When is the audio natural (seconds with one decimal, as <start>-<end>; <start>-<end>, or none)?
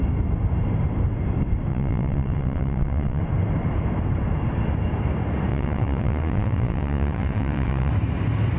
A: 0.0-1.7; 3.2-5.5; 7.9-8.6